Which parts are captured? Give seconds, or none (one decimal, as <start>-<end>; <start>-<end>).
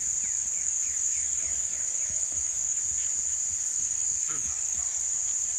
0.0-0.4; 2.8-3.7; 5.0-5.6